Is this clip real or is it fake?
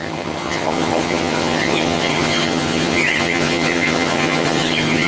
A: fake